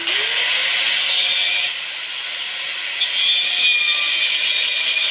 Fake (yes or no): no